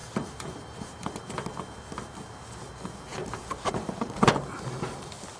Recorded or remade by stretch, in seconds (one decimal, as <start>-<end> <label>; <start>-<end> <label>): 0.0-1.2 remade; 1.2-3.1 recorded; 3.1-4.3 remade; 4.3-5.4 recorded